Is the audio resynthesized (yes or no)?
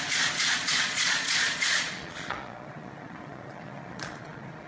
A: yes